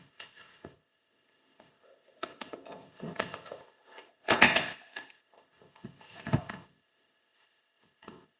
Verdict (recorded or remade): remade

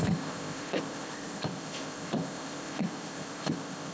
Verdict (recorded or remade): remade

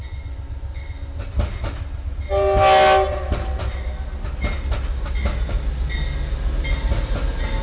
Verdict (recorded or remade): recorded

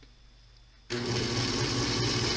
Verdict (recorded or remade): recorded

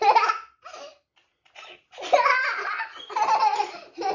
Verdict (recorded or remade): recorded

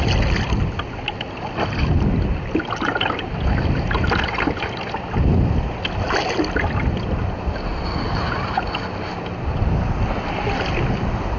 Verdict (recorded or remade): recorded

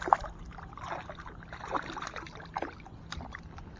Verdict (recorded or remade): recorded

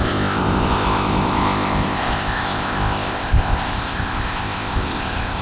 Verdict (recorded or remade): remade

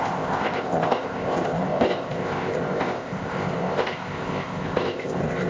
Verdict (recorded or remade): remade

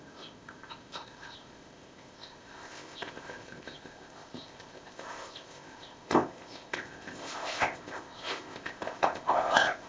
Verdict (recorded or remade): remade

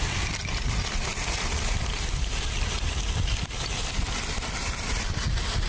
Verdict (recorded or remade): recorded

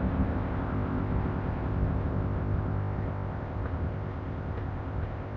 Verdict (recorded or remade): remade